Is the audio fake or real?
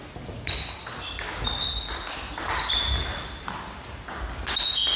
real